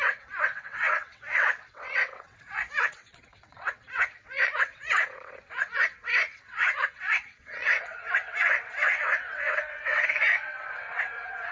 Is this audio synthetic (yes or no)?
yes